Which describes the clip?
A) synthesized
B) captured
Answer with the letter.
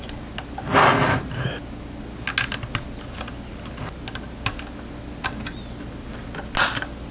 B